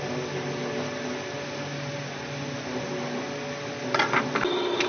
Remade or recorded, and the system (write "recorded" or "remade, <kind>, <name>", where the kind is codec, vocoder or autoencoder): recorded